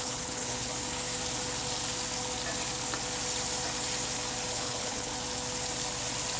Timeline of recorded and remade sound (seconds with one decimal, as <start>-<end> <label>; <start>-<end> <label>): 0.0-0.7 remade; 0.7-4.5 recorded; 4.5-5.1 remade; 5.1-6.4 recorded